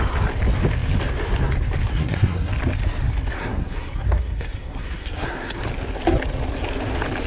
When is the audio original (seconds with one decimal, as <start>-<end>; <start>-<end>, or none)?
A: 0.0-1.9; 2.5-3.4; 5.6-7.3

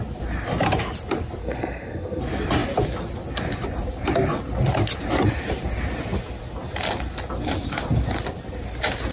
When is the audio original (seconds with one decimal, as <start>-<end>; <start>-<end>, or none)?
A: 0.0-1.4; 2.2-9.1

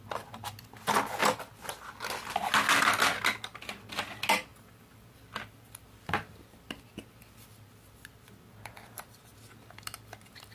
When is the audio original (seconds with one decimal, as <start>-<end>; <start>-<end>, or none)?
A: 0.0-10.5

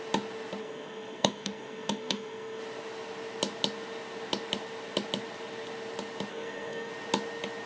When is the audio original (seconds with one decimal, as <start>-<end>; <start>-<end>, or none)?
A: 0.0-0.6; 2.6-6.3; 6.9-7.7

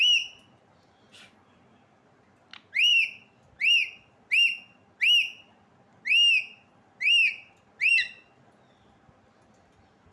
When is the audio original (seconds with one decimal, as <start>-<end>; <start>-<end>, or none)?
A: 0.0-10.1

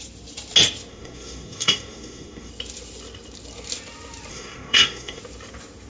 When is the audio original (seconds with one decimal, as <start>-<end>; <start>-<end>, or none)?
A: 0.0-0.9; 2.5-4.3; 5.2-5.9